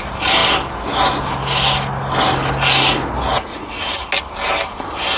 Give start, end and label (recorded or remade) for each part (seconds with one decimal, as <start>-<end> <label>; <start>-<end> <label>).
0.0-3.3 recorded; 3.3-4.1 remade; 4.1-5.2 recorded